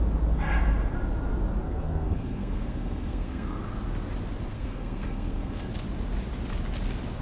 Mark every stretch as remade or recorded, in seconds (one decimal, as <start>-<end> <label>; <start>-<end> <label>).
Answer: 0.0-1.6 recorded; 1.6-3.6 remade; 3.6-4.5 recorded; 4.5-5.7 remade; 5.7-7.2 recorded